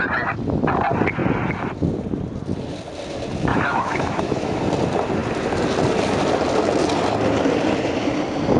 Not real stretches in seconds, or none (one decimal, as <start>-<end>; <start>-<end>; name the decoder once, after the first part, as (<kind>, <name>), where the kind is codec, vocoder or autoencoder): 3.5-4.6 (autoencoder, DAC-VAE)

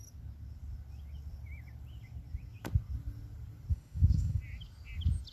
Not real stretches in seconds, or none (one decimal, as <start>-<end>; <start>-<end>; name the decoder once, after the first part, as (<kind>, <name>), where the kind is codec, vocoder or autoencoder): 3.7-4.4 (autoencoder, DAC-VAE)